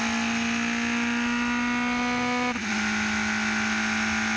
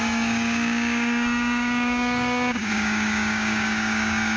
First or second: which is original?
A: first